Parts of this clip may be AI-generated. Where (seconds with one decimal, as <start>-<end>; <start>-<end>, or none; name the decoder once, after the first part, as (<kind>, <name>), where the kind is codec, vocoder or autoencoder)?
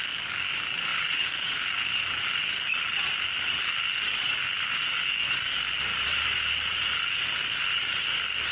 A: 0.9-1.5 (vocoder, BigVGAN v2); 5.9-6.6